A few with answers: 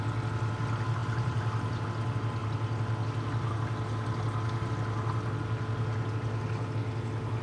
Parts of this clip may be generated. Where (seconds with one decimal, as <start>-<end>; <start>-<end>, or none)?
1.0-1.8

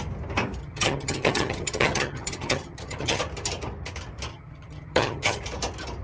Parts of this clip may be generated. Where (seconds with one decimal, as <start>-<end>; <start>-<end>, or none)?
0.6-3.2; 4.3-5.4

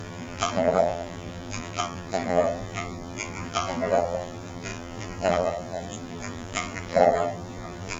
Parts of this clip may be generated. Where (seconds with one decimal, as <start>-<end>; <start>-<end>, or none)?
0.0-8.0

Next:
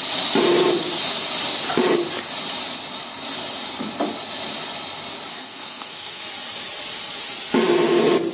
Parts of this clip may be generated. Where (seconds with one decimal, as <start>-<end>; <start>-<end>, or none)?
5.3-6.2

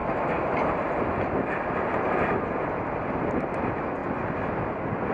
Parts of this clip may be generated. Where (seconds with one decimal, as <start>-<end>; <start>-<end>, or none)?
none